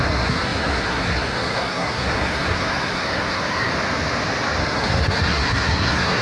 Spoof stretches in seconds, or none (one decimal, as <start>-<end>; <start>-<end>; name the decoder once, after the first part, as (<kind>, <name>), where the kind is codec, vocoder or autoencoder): 0.0-3.7 (codec, SNAC); 4.6-6.2